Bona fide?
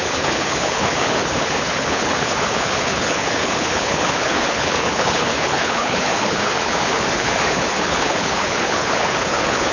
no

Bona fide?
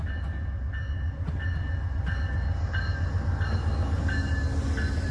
yes